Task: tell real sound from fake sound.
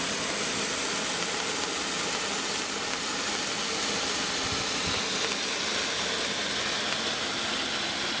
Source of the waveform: real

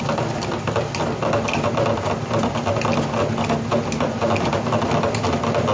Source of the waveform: real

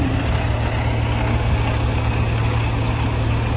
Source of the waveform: real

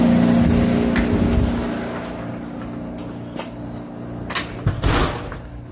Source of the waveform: real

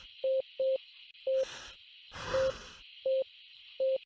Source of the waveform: real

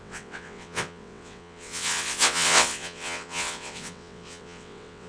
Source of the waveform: fake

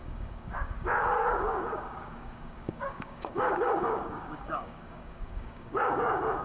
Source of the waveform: fake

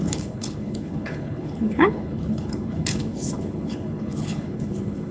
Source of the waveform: fake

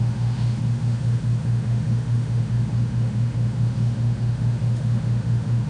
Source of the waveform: fake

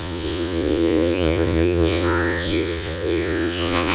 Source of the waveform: fake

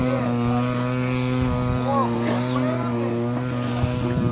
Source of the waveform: real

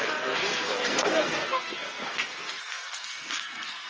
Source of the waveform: fake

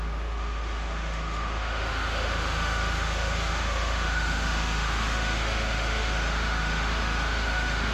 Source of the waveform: fake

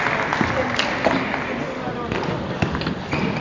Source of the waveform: real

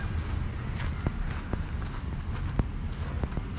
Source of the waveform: real